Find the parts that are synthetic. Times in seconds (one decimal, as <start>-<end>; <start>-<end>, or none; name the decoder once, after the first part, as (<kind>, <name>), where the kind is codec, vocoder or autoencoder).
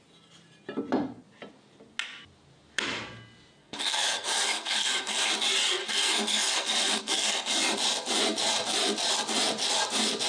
3.6-5.3 (codec, SNAC); 5.8-7.5